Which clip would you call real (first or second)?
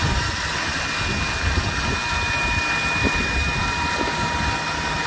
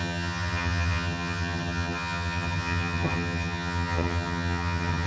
first